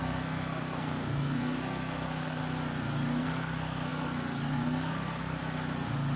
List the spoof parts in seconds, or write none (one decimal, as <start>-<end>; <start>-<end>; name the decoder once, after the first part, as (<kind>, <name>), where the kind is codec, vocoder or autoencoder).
0.0-2.4 (codec, SNAC); 3.2-5.4